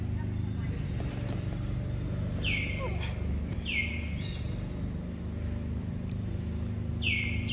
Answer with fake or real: real